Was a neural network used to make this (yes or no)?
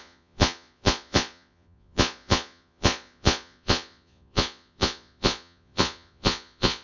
yes